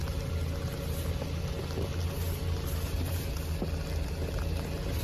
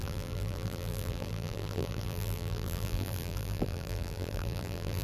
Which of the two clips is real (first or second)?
first